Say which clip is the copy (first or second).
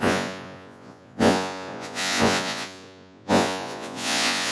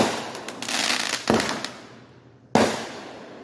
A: first